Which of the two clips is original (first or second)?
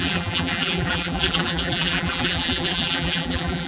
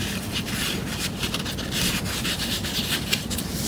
second